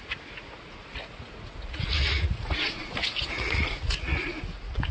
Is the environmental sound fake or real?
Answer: fake